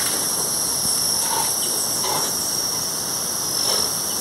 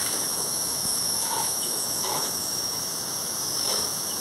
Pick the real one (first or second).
first